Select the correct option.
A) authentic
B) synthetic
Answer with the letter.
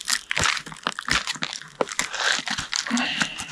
A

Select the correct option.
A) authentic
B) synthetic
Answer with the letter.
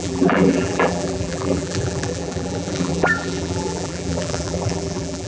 B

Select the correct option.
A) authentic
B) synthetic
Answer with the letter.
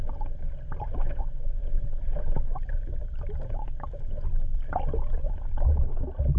A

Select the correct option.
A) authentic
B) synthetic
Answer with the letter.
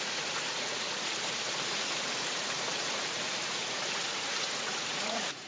B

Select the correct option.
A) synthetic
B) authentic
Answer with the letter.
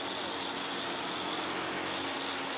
B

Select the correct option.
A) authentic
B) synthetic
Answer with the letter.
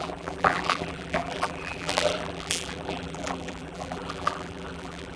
B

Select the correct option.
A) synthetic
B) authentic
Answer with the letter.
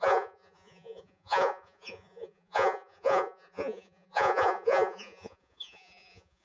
A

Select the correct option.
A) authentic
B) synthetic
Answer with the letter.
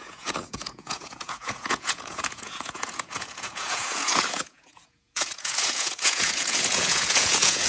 B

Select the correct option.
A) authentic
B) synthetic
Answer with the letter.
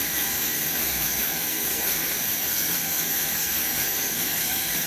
B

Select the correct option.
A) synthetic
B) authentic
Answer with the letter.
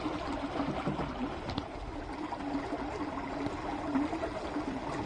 B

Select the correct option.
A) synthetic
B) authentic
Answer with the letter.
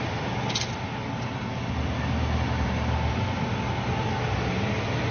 B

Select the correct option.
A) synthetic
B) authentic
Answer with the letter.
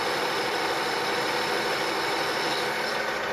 A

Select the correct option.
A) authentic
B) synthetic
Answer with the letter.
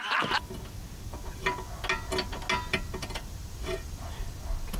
A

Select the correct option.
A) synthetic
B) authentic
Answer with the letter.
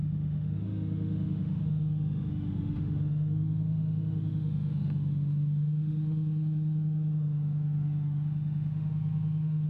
A